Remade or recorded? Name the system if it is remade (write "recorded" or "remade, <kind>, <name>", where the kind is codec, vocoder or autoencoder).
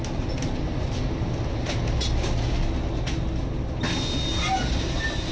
recorded